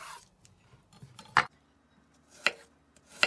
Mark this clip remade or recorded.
recorded